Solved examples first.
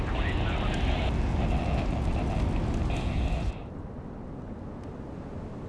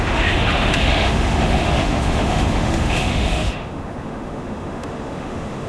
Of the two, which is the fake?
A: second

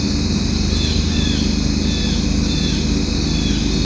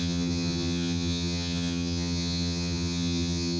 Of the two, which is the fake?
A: second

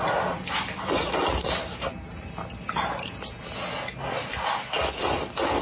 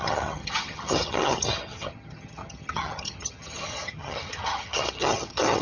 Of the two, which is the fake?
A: second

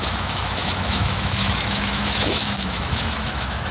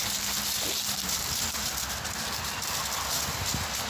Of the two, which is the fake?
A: first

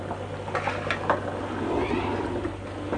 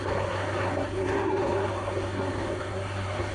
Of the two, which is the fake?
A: second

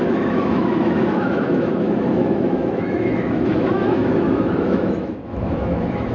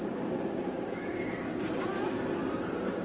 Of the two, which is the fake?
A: first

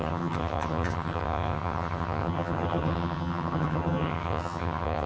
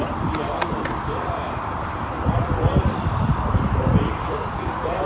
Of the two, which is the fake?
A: first